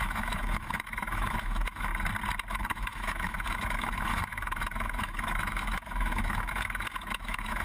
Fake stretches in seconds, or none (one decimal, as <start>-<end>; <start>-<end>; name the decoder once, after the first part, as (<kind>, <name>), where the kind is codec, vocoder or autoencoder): 0.0-1.9 (autoencoder, DAC-VAE); 2.5-7.6